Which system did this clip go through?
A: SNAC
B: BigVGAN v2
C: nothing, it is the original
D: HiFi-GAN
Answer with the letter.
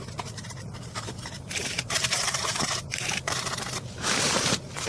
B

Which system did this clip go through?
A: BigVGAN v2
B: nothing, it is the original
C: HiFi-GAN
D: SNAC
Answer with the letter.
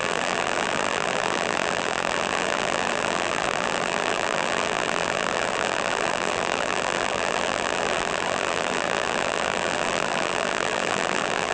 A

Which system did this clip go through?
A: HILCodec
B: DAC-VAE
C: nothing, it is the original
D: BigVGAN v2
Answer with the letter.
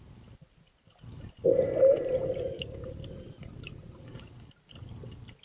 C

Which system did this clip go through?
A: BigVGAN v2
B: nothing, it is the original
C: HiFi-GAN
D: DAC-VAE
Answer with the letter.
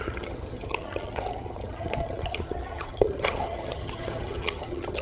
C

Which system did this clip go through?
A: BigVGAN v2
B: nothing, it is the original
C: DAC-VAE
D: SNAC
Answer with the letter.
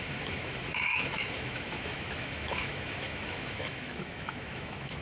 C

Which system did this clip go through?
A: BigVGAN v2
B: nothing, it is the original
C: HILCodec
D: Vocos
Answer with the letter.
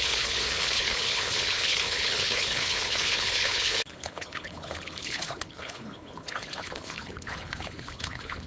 C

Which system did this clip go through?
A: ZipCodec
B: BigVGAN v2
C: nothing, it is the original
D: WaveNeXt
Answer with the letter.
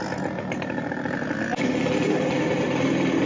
C